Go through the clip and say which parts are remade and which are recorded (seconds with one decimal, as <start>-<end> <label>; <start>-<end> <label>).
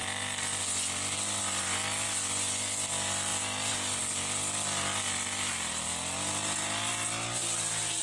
0.0-8.0 recorded